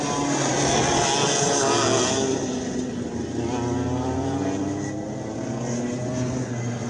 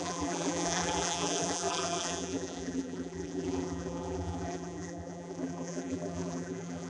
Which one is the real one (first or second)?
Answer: first